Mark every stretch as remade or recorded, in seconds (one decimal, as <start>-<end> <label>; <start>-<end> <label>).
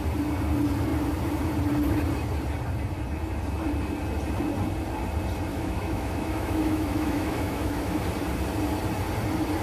0.0-5.5 recorded; 5.5-8.0 remade; 8.0-9.6 recorded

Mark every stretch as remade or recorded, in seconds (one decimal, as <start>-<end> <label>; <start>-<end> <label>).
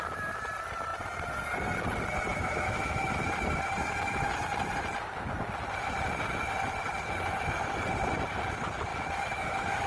0.0-2.3 recorded; 2.3-3.2 remade; 3.2-8.9 recorded; 8.9-9.9 remade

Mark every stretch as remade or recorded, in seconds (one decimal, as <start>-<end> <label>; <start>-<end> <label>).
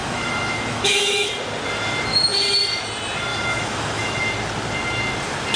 0.0-1.3 remade; 1.3-3.3 recorded; 3.3-4.2 remade; 4.2-5.6 recorded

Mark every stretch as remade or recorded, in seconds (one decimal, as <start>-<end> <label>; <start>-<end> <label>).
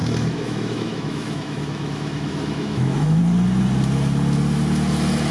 0.0-3.2 remade; 3.2-5.3 recorded